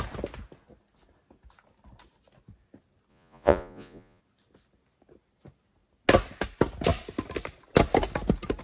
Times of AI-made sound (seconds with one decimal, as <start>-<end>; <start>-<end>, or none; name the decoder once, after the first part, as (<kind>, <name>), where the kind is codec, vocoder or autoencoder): 3.1-4.2 (vocoder, Vocos)